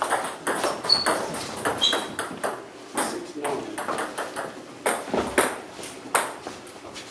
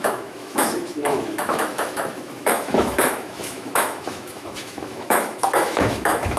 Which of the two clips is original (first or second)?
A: first